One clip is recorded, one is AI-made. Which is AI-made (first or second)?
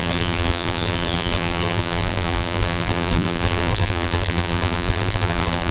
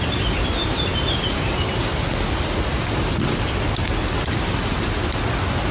first